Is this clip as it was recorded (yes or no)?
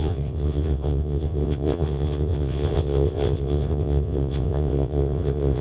no